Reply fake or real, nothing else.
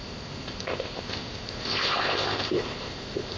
fake